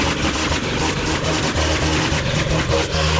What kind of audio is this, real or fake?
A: real